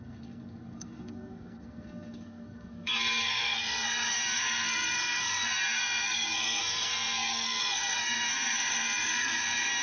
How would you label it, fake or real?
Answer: fake